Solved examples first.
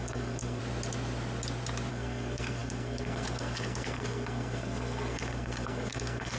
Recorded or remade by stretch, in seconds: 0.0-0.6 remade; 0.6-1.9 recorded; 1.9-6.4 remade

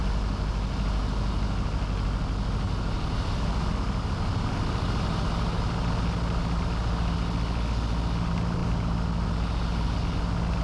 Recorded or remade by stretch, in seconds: 0.0-10.6 recorded

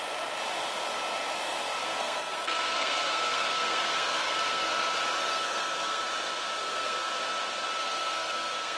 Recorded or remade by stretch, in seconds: 0.0-1.8 recorded; 1.8-4.7 remade; 4.7-5.3 recorded; 5.3-6.0 remade; 6.0-6.6 recorded; 6.6-7.1 remade; 7.1-7.8 recorded; 7.8-8.8 remade

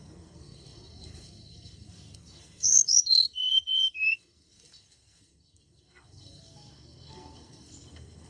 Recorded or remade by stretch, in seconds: 0.0-8.3 remade

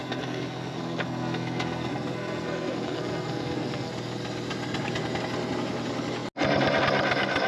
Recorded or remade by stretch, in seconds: 0.0-3.9 remade; 3.9-7.5 recorded

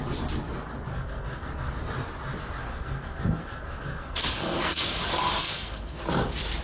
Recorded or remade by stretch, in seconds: 0.0-0.9 recorded; 0.9-1.7 remade; 1.7-2.6 recorded; 2.6-5.0 remade; 5.0-5.4 recorded; 5.4-6.0 remade; 6.0-6.6 recorded